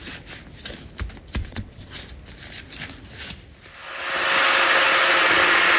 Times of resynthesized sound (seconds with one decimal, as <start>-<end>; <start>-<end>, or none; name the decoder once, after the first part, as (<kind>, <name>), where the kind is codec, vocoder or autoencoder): 1.4-2.0 (vocoder, WaveNeXt)